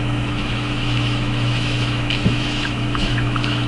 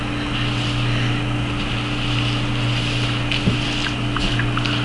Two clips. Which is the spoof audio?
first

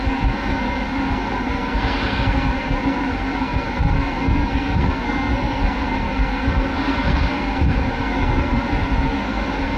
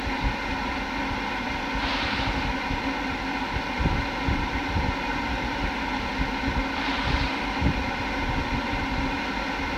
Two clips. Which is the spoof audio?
first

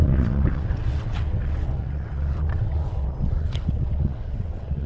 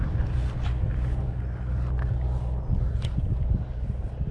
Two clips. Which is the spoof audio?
first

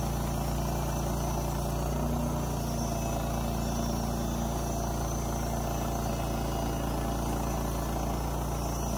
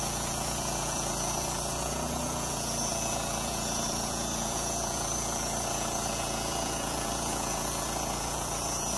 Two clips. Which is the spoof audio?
second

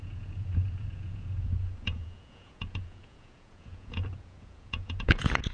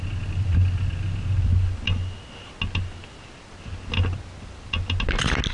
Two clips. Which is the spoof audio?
first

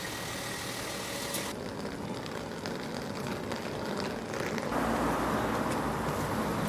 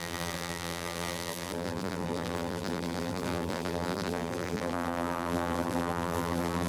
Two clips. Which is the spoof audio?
second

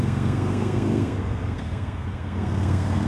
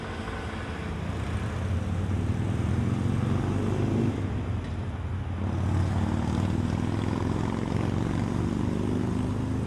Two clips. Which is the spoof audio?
first